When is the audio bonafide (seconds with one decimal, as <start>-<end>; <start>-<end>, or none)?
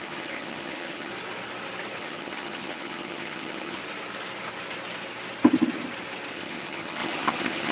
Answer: 1.1-2.0; 3.8-6.3